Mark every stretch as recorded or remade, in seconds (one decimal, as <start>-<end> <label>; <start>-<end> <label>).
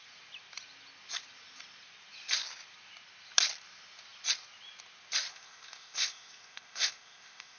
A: 0.0-5.3 recorded; 5.3-7.6 remade